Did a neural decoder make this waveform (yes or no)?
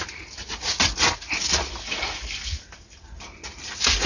no